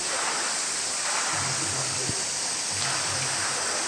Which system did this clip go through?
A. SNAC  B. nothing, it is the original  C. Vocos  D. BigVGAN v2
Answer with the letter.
B